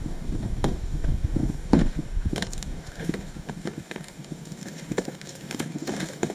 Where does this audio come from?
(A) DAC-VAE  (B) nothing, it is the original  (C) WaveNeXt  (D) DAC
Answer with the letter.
D